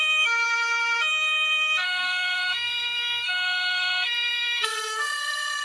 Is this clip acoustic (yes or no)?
no